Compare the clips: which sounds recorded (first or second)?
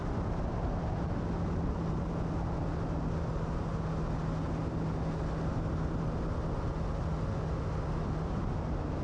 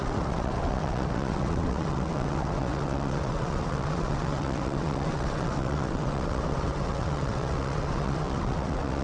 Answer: first